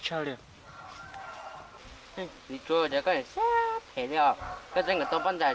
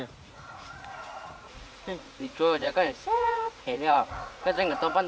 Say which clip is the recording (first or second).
first